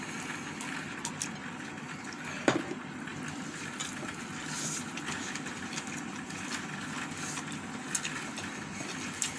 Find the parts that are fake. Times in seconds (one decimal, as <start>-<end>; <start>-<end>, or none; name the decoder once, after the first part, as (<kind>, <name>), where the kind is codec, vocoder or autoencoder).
none